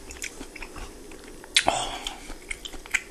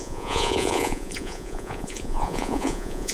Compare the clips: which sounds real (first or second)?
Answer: first